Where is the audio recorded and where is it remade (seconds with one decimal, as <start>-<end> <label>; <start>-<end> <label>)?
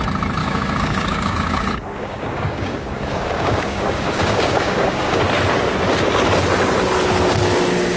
0.0-0.4 recorded; 0.4-5.2 remade; 5.2-8.0 recorded